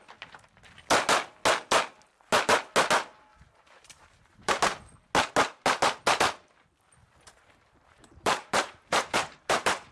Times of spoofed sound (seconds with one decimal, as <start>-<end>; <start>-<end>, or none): 3.3-4.5; 7.0-9.9